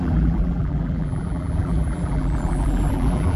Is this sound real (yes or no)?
no